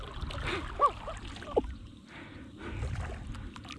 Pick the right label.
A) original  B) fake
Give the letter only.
A